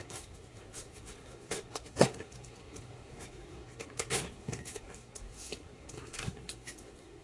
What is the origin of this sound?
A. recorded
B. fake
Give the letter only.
B